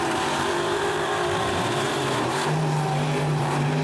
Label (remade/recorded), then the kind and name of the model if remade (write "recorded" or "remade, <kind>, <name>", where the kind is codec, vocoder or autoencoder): remade, vocoder, BigVGAN v2